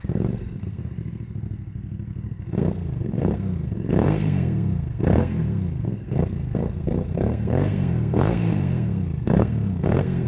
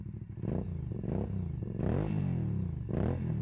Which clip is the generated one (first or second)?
first